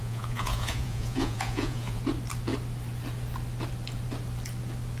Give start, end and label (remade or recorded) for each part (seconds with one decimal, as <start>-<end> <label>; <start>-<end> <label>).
0.0-2.0 remade; 2.0-5.0 recorded